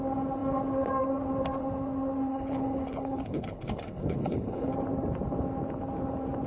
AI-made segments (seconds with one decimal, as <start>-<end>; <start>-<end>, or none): 2.3-4.7